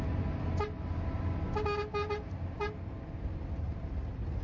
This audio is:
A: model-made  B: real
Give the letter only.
B